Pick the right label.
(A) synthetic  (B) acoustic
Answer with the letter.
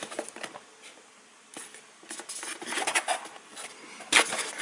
B